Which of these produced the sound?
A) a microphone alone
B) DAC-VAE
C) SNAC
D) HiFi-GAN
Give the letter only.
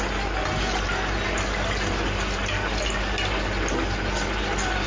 A